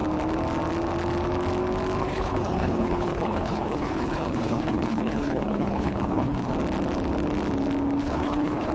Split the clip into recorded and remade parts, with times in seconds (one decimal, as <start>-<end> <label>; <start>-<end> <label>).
0.0-2.0 recorded; 2.0-6.5 remade; 6.5-8.0 recorded; 8.0-8.7 remade